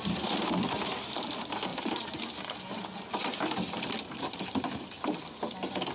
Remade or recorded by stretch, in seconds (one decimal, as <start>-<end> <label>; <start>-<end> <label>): 0.0-1.7 recorded; 1.7-2.2 remade; 2.2-3.3 recorded; 3.3-4.8 remade; 4.8-5.9 recorded